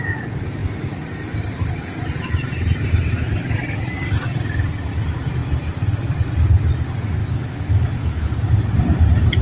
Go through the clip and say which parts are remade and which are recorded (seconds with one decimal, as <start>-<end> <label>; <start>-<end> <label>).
0.0-7.2 recorded; 7.2-8.3 remade; 8.3-9.4 recorded